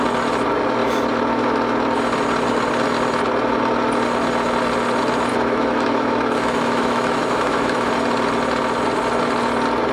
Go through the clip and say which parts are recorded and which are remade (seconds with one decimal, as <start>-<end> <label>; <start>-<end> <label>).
0.0-5.3 recorded; 5.3-7.9 remade; 7.9-9.9 recorded